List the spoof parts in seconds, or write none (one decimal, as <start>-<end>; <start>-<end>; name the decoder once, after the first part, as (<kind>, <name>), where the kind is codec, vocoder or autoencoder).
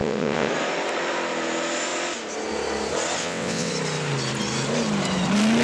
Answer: 0.0-0.5 (vocoder, WaveNeXt); 3.2-3.7